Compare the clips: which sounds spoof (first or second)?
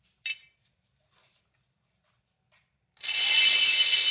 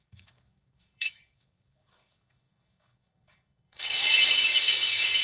second